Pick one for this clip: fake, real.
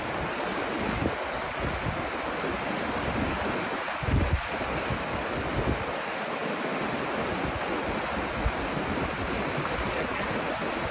real